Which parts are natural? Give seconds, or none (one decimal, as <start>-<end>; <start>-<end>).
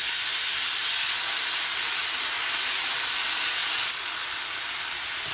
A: 0.0-5.3